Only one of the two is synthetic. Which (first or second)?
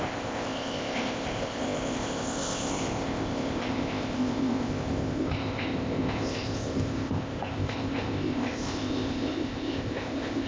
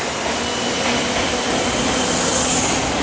first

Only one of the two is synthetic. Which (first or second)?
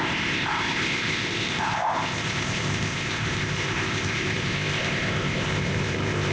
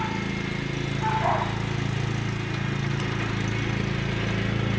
first